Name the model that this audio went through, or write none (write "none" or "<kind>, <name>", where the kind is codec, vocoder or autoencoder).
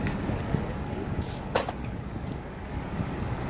codec, DAC